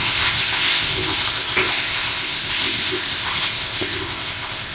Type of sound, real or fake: fake